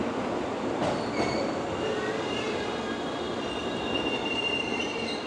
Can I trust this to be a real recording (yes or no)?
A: no